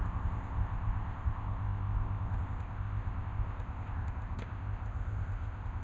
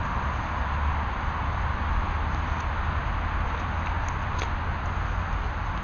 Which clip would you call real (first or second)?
second